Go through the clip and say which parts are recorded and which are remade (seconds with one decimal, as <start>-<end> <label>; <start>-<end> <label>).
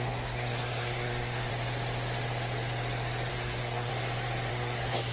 0.0-1.5 remade; 1.5-3.3 recorded; 3.3-3.9 remade; 3.9-4.5 recorded; 4.5-5.1 remade